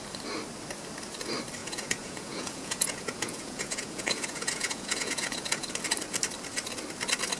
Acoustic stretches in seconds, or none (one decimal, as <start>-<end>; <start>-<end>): 0.0-1.6; 5.7-7.4